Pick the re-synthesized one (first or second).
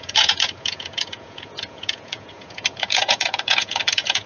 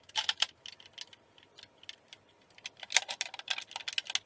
first